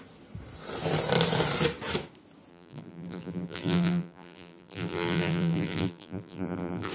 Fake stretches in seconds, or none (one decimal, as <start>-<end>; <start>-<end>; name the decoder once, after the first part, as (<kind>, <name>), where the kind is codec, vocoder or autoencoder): 2.5-6.9 (vocoder, BigVGAN v2)